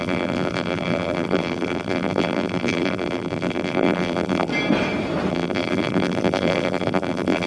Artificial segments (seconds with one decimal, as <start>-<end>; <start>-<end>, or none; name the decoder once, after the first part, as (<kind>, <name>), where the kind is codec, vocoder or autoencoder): 0.0-4.5 (vocoder, BigVGAN v2); 5.3-7.5